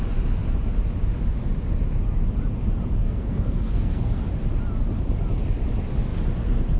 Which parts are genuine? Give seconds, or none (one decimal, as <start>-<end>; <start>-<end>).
0.0-3.0; 4.3-6.8